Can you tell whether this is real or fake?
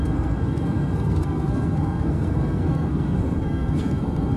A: fake